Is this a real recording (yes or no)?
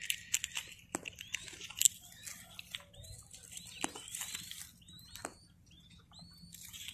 no